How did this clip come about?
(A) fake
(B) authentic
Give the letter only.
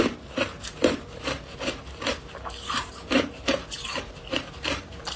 A